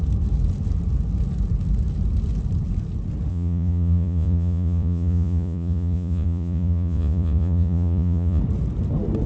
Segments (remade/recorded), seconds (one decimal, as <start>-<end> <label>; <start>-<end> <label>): 0.0-3.3 recorded; 3.3-8.4 remade; 8.4-9.3 recorded